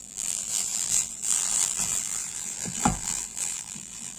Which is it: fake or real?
fake